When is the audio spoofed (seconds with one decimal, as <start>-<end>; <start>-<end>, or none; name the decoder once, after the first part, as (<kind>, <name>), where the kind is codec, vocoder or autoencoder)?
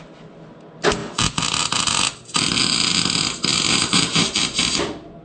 3.5-4.6 (vocoder, BigVGAN v2)